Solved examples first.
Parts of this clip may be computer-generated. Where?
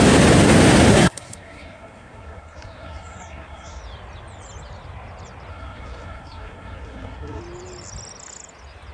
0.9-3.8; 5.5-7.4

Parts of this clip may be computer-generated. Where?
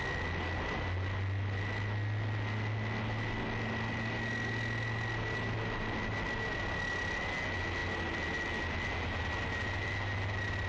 none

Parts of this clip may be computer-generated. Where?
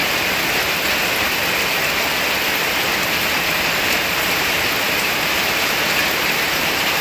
3.1-7.0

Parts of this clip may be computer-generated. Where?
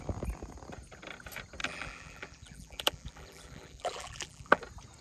1.6-4.6